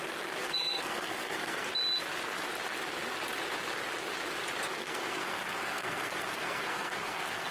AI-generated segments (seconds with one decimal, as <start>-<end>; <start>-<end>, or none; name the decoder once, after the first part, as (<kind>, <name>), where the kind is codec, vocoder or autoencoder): 0.4-1.7 (codec, SNAC); 4.7-7.5